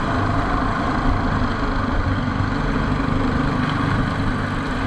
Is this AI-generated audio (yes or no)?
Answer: no